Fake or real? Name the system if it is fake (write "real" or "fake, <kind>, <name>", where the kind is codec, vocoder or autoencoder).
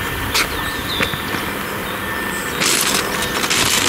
real